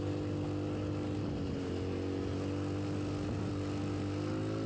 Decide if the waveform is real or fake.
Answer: real